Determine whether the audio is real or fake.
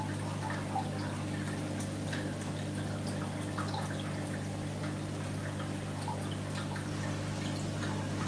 real